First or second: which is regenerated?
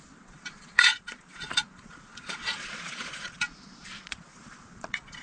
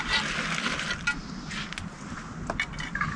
first